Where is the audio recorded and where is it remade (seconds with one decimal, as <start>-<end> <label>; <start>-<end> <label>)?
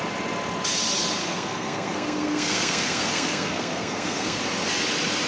0.0-1.2 recorded; 1.2-4.4 remade; 4.4-5.3 recorded